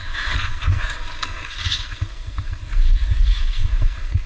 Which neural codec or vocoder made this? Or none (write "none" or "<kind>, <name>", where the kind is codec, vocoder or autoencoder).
codec, SNAC